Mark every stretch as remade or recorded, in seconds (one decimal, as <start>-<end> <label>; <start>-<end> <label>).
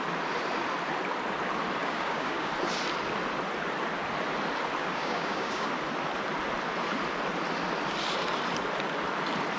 0.0-1.8 recorded; 1.8-2.5 remade; 2.5-4.8 recorded; 4.8-5.7 remade; 5.7-9.6 recorded